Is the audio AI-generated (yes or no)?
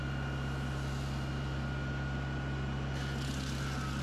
no